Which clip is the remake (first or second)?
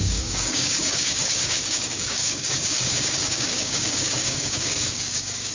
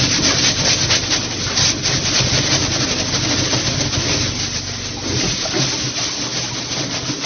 first